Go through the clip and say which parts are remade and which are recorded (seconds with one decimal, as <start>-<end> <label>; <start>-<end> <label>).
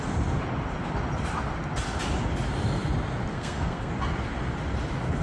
0.0-3.3 recorded; 3.3-3.9 remade; 3.9-5.2 recorded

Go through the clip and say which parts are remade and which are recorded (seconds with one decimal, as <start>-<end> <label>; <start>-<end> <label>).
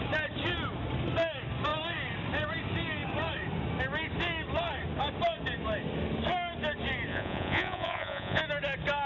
0.0-7.1 recorded; 7.1-8.4 remade; 8.4-9.1 recorded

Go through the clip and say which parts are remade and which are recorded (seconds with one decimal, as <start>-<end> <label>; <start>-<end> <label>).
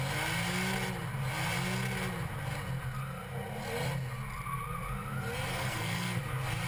0.0-5.5 recorded; 5.5-6.2 remade; 6.2-6.7 recorded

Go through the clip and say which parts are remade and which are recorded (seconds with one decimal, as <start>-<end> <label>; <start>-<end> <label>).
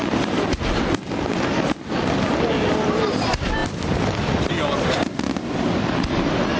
0.0-3.6 recorded; 3.6-4.5 remade; 4.5-6.6 recorded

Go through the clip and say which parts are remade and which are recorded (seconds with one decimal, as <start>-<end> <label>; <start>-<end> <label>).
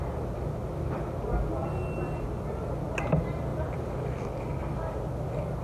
0.0-3.5 recorded; 3.5-4.6 remade; 4.6-5.6 recorded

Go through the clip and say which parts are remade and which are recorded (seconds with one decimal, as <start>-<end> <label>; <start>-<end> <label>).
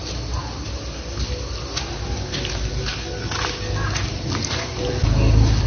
0.0-5.7 recorded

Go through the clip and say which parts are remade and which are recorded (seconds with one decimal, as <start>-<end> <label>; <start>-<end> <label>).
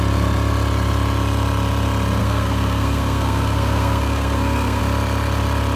0.0-2.2 recorded; 2.2-4.8 remade; 4.8-5.8 recorded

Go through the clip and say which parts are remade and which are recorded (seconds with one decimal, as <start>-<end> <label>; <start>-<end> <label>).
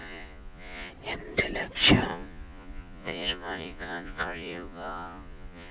0.0-0.9 remade; 0.9-2.1 recorded; 2.1-5.7 remade